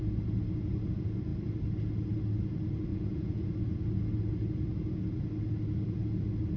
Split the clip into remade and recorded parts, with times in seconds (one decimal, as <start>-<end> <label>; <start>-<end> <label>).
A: 0.0-2.9 recorded; 2.9-3.5 remade; 3.5-6.6 recorded